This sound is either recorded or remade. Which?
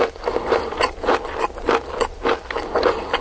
recorded